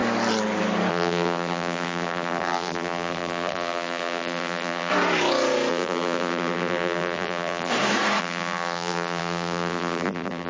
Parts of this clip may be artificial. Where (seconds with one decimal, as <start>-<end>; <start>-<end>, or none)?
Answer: 0.9-4.9; 5.7-7.7; 8.2-10.5